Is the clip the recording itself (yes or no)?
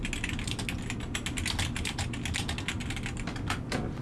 yes